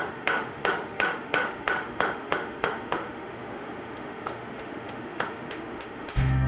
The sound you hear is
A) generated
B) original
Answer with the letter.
A